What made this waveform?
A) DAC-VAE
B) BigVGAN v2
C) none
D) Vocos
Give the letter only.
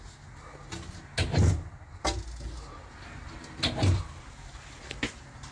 C